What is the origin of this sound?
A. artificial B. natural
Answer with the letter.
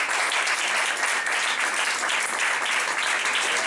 B